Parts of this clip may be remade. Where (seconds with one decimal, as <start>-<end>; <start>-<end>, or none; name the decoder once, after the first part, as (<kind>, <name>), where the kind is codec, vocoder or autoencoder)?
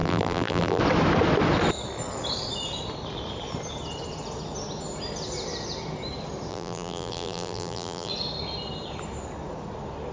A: 0.0-0.8 (vocoder, BigVGAN v2); 6.5-8.1